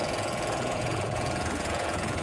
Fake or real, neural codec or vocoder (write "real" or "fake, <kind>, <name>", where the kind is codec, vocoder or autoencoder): fake, vocoder, Vocos